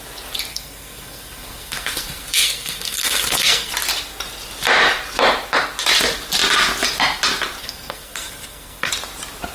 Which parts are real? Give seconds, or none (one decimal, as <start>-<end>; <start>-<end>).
0.0-0.5; 3.7-7.6; 8.9-9.5